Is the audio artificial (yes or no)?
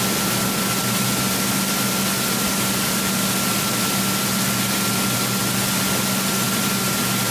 no